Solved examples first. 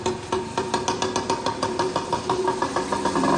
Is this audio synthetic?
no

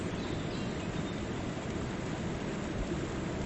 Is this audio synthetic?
no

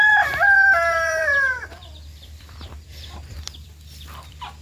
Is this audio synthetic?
yes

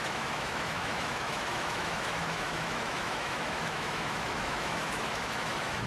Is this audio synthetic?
yes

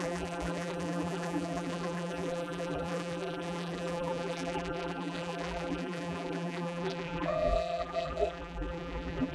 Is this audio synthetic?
yes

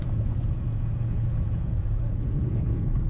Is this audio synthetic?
yes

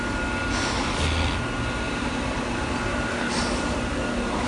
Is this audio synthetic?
no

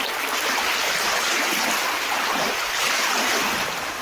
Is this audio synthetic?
no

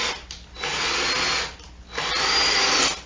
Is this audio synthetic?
no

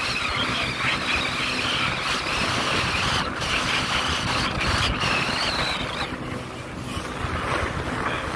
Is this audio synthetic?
no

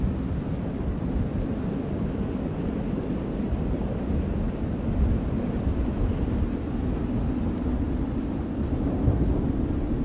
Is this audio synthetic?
no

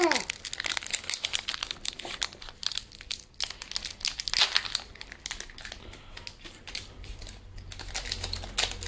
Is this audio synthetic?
no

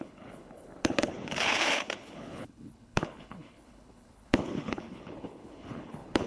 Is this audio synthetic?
yes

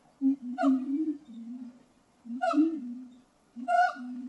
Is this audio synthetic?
yes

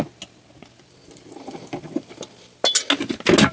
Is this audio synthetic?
no